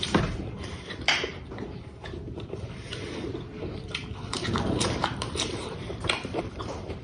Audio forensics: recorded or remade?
remade